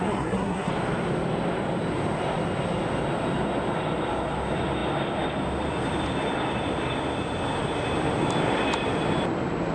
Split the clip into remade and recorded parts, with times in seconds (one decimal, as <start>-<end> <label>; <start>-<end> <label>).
0.0-0.7 remade; 0.7-9.7 recorded

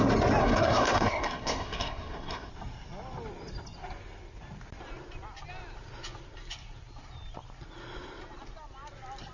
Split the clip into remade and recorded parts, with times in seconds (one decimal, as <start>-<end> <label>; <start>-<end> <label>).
0.0-0.4 recorded; 0.4-2.5 remade; 2.5-9.3 recorded

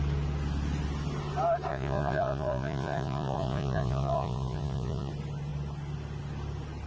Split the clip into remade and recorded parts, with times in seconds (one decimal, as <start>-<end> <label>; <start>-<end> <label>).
0.0-1.7 recorded; 1.7-5.1 remade; 5.1-6.9 recorded

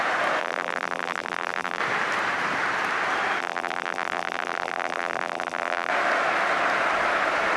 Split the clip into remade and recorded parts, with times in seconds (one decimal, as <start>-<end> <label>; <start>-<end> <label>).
0.0-0.4 recorded; 0.4-1.8 remade; 1.8-3.4 recorded; 3.4-5.9 remade; 5.9-7.6 recorded

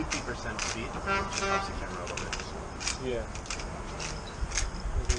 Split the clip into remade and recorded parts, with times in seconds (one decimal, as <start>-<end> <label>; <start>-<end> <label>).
0.0-5.2 recorded

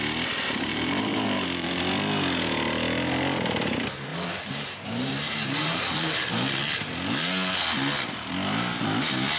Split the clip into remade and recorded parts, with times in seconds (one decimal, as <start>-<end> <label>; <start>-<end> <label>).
0.0-0.7 recorded; 0.7-1.8 remade; 1.8-4.1 recorded; 4.1-6.3 remade; 6.3-9.4 recorded

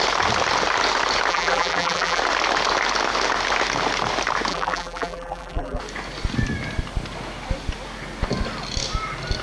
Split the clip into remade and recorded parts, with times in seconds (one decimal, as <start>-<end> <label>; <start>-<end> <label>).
0.0-1.3 recorded; 1.3-2.2 remade; 2.2-4.5 recorded; 4.5-5.8 remade; 5.8-9.4 recorded